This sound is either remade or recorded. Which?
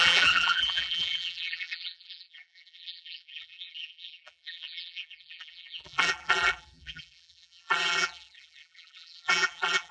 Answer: remade